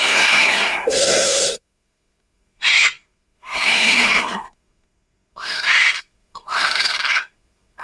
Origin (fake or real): fake